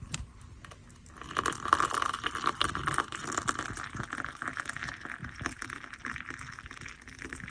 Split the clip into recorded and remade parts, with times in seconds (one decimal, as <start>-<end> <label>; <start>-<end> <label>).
0.0-7.5 recorded